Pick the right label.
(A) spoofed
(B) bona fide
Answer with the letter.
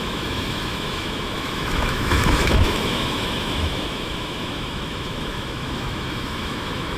A